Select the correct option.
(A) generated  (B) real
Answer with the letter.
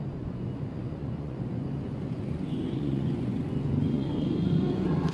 A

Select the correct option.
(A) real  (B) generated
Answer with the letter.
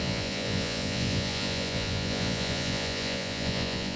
B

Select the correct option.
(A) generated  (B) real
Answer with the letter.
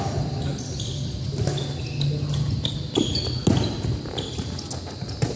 B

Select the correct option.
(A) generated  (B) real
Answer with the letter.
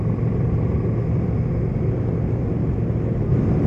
B